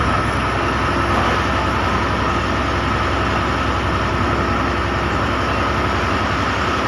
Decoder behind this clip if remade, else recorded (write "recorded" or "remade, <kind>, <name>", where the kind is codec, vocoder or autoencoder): recorded